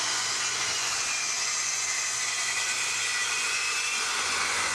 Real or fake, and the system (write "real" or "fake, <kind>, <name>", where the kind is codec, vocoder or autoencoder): fake, vocoder, Vocos